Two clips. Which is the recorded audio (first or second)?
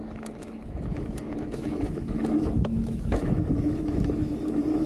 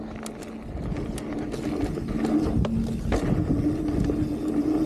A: second